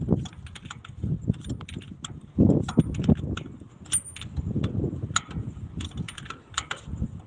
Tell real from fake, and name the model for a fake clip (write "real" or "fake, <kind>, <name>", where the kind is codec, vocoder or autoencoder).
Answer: real